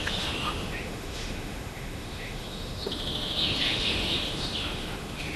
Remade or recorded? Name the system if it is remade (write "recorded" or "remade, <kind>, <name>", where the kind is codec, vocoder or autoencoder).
remade, autoencoder, DAC-VAE